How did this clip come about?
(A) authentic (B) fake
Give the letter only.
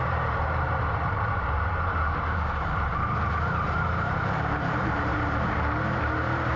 B